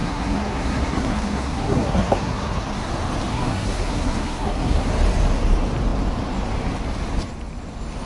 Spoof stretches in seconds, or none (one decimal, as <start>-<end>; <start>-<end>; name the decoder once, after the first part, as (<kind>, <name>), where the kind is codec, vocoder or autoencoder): 0.0-2.9 (codec, SNAC); 3.3-4.9